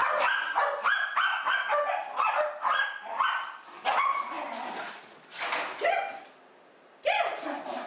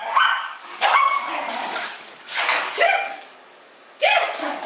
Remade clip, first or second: second